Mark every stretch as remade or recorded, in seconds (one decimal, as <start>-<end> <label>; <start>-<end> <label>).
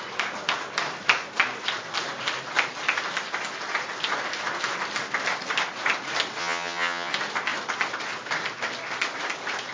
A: 0.0-6.4 recorded; 6.4-7.1 remade; 7.1-9.7 recorded